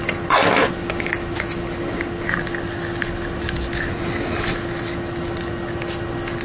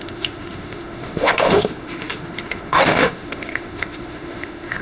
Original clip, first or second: first